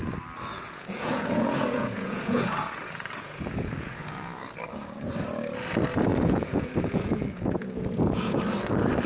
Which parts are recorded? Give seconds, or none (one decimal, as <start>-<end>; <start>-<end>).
0.0-0.5; 4.4-6.1; 8.4-9.1

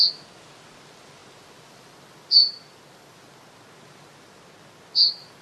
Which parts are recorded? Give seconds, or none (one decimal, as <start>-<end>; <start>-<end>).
0.0-5.4

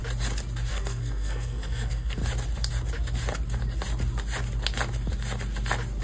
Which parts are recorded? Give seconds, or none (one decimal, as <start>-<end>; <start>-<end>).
0.0-0.7; 2.2-6.0

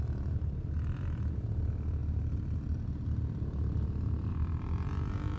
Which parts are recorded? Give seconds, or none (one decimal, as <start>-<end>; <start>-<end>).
0.0-5.4